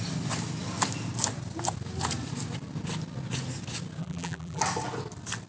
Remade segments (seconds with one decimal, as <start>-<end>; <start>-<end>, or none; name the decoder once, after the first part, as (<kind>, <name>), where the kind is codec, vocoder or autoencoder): 4.0-4.6 (vocoder, BigVGAN v2)